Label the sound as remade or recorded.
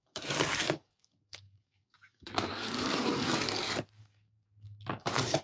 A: remade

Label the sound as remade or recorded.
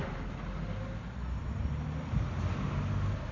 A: recorded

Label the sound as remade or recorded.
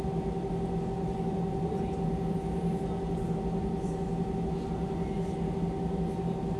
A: recorded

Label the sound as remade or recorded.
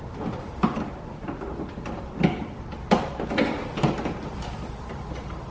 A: recorded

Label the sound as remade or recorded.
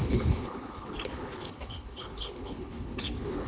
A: remade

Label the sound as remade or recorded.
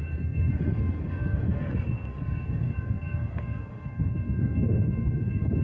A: remade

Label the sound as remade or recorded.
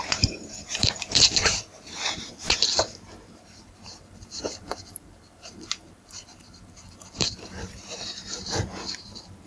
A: remade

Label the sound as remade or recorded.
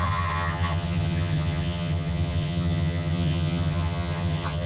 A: remade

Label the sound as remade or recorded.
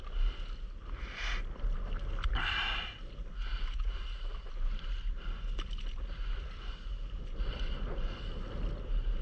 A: recorded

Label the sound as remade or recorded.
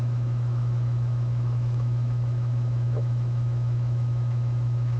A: remade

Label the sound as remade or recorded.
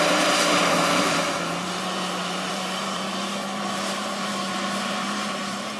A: remade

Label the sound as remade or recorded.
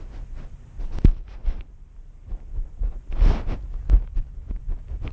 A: recorded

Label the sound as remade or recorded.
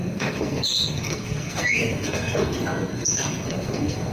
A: remade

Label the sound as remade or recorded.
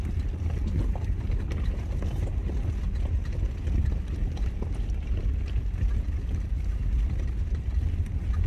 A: recorded